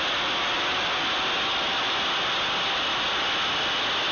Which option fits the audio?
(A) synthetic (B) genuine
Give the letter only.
B